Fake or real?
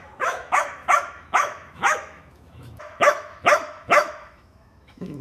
fake